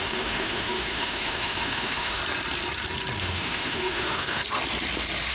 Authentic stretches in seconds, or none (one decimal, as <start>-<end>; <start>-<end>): 2.2-3.2; 4.4-5.3